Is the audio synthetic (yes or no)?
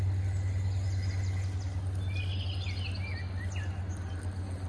no